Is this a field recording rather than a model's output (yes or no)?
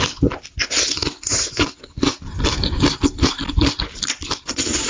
yes